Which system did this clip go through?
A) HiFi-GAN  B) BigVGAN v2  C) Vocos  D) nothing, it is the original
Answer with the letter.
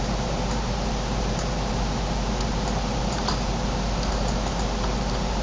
B